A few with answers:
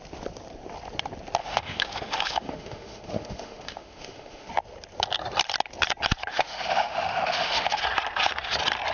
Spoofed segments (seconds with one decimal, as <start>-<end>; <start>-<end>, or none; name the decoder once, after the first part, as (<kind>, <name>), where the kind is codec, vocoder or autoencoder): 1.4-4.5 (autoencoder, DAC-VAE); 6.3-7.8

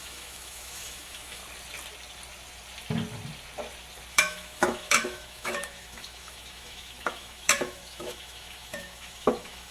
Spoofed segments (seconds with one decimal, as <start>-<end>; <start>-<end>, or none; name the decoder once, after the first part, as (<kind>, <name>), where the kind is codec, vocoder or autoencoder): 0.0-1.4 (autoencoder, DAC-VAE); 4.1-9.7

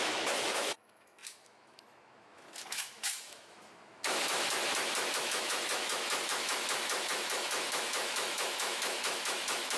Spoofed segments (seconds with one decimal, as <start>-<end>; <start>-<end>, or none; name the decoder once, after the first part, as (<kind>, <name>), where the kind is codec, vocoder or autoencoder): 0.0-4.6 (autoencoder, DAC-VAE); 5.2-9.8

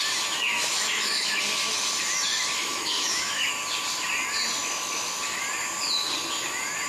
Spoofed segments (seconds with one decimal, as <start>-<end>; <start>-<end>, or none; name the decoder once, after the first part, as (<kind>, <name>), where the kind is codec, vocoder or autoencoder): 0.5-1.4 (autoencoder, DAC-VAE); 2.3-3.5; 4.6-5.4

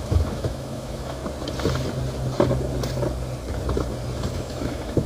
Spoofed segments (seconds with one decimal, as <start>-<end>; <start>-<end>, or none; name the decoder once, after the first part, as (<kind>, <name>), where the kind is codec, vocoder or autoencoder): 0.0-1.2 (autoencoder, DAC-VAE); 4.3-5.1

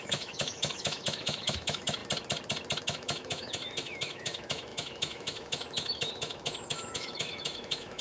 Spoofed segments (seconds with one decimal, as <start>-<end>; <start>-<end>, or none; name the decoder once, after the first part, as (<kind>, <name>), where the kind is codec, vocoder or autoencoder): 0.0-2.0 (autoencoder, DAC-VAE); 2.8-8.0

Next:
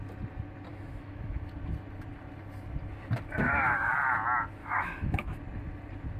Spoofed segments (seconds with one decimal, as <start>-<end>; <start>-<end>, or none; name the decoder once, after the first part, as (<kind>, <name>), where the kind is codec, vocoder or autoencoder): 0.7-1.5 (autoencoder, DAC-VAE); 3.4-3.9; 4.6-5.4